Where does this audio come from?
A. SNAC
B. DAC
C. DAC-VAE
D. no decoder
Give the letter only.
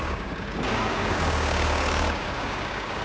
B